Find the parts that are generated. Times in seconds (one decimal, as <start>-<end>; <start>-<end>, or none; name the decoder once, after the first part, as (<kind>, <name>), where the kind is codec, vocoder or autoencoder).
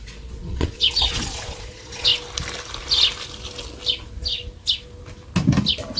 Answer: 0.0-2.1 (vocoder, Vocos)